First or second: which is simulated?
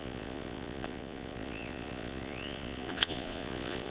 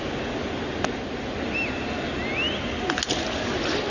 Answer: first